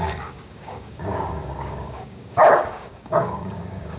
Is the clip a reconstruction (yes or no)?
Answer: yes